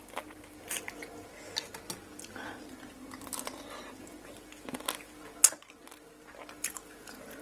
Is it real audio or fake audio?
real